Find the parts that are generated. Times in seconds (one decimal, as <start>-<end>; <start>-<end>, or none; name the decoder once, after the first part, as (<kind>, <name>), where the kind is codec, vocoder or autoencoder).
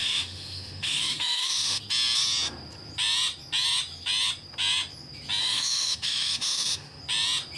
0.0-1.8 (autoencoder, DAC-VAE); 5.4-7.0